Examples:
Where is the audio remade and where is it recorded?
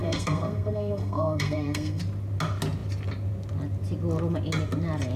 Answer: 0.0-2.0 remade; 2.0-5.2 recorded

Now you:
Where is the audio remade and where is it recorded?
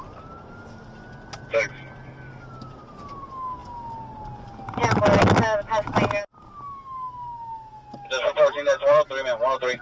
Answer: 0.0-9.8 recorded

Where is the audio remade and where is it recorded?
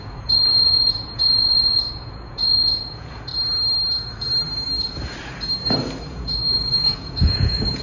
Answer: 0.0-3.3 remade; 3.3-6.1 recorded; 6.1-7.8 remade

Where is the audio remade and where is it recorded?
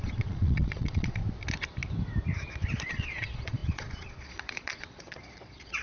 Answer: 0.0-1.2 remade; 1.2-2.9 recorded; 2.9-5.8 remade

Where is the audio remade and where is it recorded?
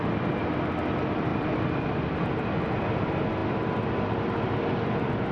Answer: 0.0-1.3 recorded; 1.3-2.2 remade; 2.2-5.3 recorded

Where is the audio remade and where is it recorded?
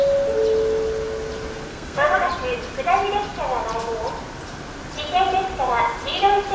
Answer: 0.0-1.7 recorded; 1.7-2.3 remade; 2.3-6.5 recorded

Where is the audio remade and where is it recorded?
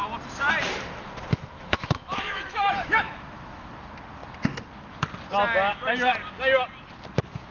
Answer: 0.0-1.3 recorded; 1.3-3.7 remade; 3.7-7.5 recorded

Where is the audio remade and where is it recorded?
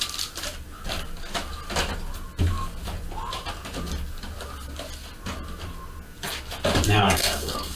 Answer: 0.0-7.0 recorded; 7.0-7.8 remade